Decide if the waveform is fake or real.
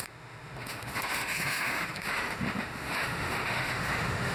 fake